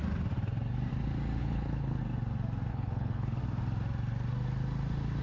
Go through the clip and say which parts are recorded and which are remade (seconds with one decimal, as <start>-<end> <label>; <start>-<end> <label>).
0.0-1.4 recorded; 1.4-2.0 remade; 2.0-2.7 recorded; 2.7-3.4 remade; 3.4-5.2 recorded